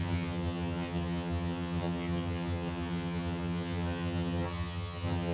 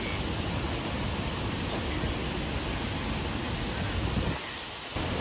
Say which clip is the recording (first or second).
second